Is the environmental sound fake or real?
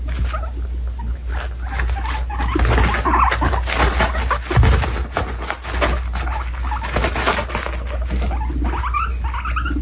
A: real